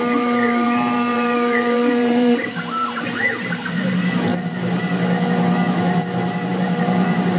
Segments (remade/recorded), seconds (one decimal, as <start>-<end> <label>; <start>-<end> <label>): 0.0-4.3 remade; 4.3-6.5 recorded; 6.5-7.4 remade